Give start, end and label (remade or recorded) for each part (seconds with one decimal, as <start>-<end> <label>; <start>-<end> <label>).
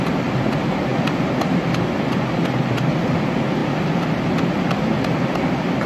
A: 0.0-3.6 remade; 3.6-5.3 recorded; 5.3-5.9 remade